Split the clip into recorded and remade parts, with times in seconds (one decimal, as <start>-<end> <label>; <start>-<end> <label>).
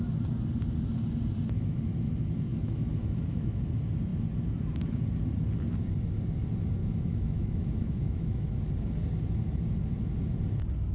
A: 0.0-2.5 recorded; 2.5-3.6 remade; 3.6-6.8 recorded; 6.8-8.6 remade; 8.6-10.9 recorded